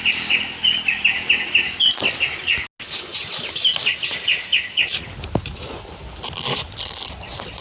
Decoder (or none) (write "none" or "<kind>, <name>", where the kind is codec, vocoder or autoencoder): none